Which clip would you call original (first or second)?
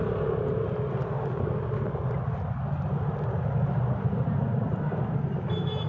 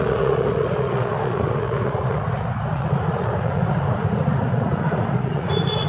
first